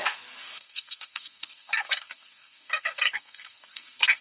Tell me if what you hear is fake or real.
fake